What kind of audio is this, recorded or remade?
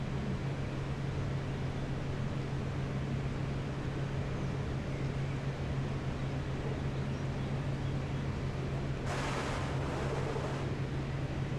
recorded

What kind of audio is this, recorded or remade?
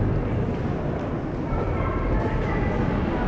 recorded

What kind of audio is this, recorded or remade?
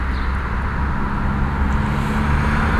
recorded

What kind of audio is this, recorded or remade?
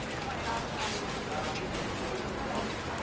recorded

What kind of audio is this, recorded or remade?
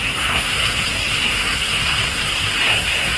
remade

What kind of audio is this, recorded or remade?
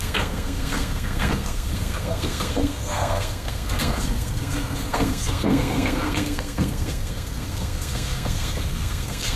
remade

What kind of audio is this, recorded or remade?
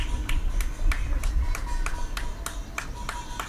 recorded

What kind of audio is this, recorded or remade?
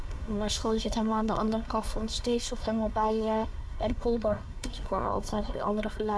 remade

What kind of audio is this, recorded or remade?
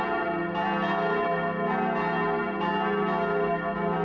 recorded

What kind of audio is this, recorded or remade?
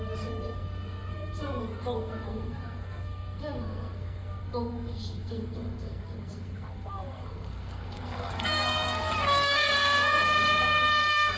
remade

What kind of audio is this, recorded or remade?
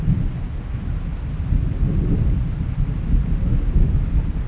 recorded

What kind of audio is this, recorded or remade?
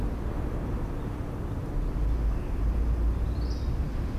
recorded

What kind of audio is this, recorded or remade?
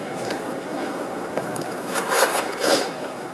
remade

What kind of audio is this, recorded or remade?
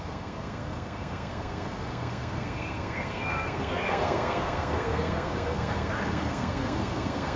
remade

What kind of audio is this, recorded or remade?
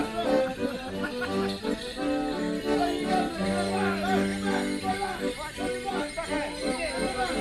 recorded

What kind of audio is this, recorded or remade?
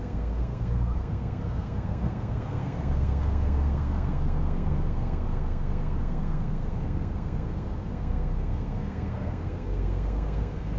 remade